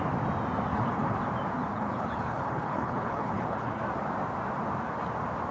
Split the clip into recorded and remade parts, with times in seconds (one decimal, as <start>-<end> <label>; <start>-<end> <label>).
0.0-0.7 recorded; 0.7-1.2 remade; 1.2-1.7 recorded; 1.7-3.8 remade; 3.8-5.5 recorded